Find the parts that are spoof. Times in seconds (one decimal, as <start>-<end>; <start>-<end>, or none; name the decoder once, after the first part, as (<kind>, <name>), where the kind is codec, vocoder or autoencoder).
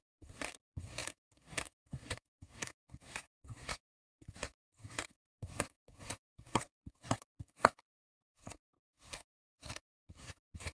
0.0-10.7 (codec, SNAC)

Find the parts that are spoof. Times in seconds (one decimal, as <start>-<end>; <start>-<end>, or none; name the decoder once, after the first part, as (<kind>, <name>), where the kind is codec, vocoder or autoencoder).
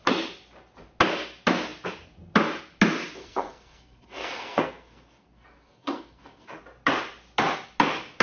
3.2-6.6 (codec, SNAC)